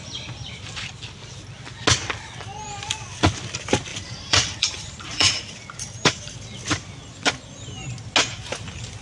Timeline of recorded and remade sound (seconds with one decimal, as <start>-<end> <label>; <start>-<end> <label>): 0.0-3.9 recorded; 3.9-6.2 remade; 6.2-9.0 recorded

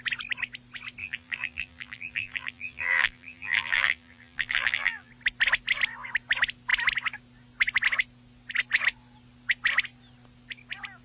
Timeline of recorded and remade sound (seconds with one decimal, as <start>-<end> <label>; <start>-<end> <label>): 0.0-1.0 recorded; 1.0-5.1 remade; 5.1-11.0 recorded

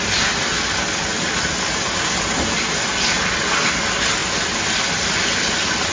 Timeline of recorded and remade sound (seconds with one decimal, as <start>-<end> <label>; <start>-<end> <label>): 0.0-5.9 recorded

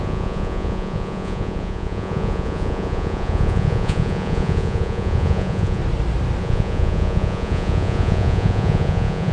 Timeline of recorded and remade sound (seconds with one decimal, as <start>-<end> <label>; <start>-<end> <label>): 0.0-5.8 remade; 5.8-6.4 recorded; 6.4-9.3 remade

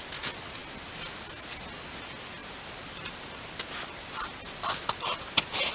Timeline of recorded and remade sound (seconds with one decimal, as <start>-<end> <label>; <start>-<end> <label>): 0.0-5.7 recorded

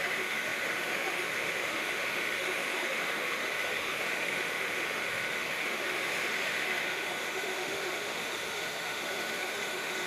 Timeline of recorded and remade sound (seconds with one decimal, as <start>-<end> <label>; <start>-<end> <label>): 0.0-10.1 remade

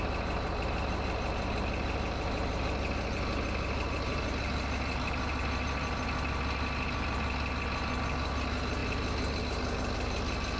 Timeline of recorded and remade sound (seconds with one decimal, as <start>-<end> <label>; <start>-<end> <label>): 0.0-10.6 recorded

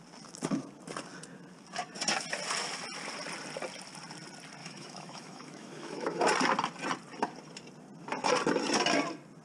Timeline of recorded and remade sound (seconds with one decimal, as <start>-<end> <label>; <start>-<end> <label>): 0.0-4.6 recorded; 4.6-6.2 remade; 6.2-9.4 recorded